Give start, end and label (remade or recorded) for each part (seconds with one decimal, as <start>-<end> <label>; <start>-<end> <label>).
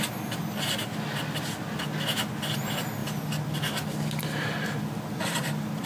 0.0-5.9 recorded